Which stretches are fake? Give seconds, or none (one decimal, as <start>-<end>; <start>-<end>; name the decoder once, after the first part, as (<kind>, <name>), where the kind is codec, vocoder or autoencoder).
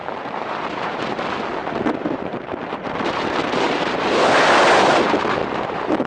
0.0-1.0 (vocoder, BigVGAN v2); 1.6-4.0; 5.4-6.1